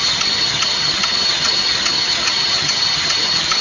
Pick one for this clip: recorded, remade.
remade